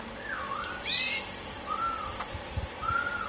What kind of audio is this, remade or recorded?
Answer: recorded